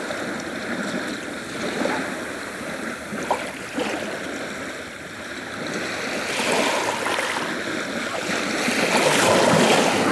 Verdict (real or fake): real